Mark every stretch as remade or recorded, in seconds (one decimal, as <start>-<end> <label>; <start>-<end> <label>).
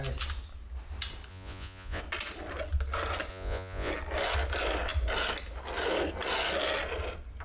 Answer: 0.0-1.3 recorded; 1.3-2.0 remade; 2.0-3.3 recorded; 3.3-3.9 remade; 3.9-7.4 recorded